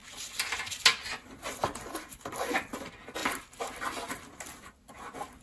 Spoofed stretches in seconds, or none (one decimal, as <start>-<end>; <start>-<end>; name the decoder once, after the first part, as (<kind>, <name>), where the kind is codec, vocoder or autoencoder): none